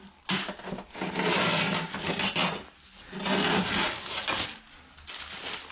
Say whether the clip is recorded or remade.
recorded